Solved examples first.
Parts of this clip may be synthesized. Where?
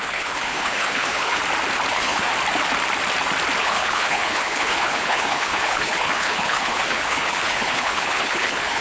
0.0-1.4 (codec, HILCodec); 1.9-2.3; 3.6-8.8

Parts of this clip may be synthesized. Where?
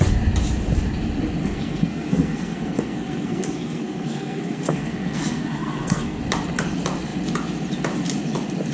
1.4-6.2 (codec, SNAC)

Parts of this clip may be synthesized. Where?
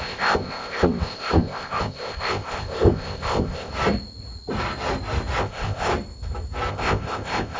0.0-3.7 (codec, ZipCodec); 5.4-5.9; 6.7-7.6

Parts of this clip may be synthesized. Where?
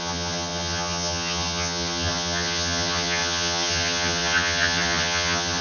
0.0-5.6 (vocoder, HiFi-GAN)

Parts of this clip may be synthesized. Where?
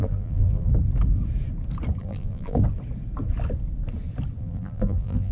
0.0-0.7 (vocoder, BigVGAN v2); 2.0-2.6; 4.4-5.3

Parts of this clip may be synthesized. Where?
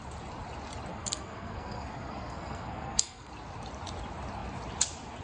0.9-3.3 (codec, SNAC)